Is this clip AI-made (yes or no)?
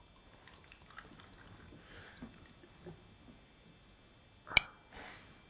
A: no